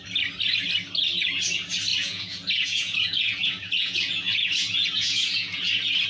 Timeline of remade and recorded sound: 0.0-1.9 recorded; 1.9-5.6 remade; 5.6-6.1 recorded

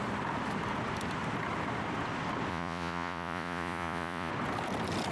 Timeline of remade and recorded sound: 0.0-2.5 recorded; 2.5-4.3 remade; 4.3-5.1 recorded

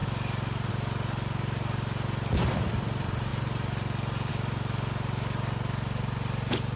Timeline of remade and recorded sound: 0.0-6.8 recorded

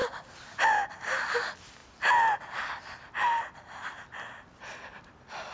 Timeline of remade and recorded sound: 0.0-5.5 recorded